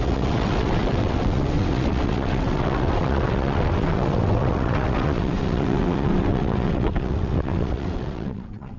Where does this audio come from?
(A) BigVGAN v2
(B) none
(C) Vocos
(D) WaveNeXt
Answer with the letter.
D